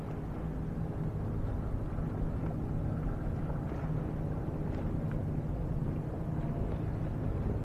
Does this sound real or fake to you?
real